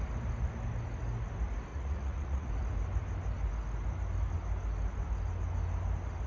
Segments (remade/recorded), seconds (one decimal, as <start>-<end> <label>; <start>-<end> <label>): 0.0-1.7 recorded; 1.7-2.5 remade; 2.5-6.3 recorded